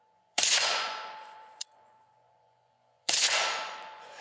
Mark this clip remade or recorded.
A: remade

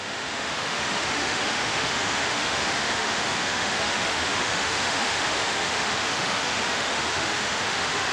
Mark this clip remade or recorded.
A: remade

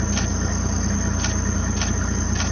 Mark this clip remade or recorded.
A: recorded